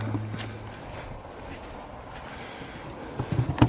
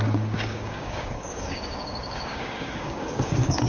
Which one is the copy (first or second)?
second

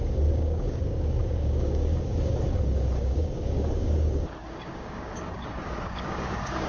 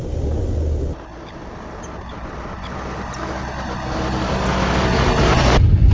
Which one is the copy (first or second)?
first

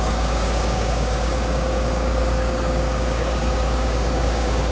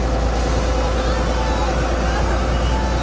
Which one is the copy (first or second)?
first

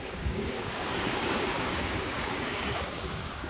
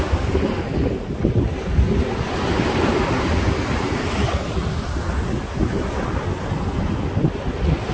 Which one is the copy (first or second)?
first